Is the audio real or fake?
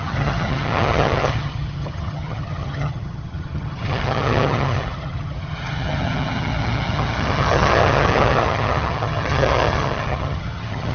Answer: fake